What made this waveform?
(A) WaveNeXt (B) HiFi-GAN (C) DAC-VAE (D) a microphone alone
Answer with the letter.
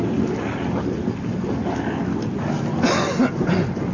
D